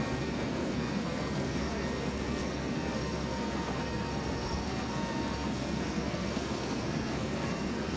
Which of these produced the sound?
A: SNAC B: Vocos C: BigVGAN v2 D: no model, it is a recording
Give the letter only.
A